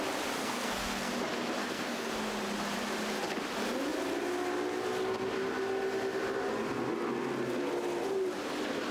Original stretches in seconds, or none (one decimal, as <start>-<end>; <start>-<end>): 0.0-0.4; 1.1-1.6; 2.1-8.9